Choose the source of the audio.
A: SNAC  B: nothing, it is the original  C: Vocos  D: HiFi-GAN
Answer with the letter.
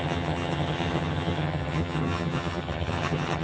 D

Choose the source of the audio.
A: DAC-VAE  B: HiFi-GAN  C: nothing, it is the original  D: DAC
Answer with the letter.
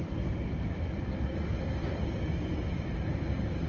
C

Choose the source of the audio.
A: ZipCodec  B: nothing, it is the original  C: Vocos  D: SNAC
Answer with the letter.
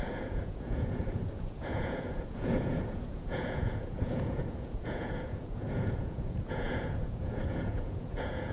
C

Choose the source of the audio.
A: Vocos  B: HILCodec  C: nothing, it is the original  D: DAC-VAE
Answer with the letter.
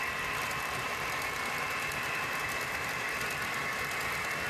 C